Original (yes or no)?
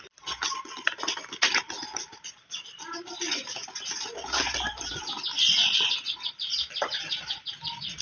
yes